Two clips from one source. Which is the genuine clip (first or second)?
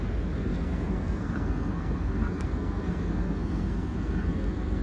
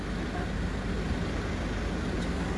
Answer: second